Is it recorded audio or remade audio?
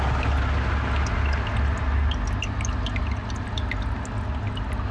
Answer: recorded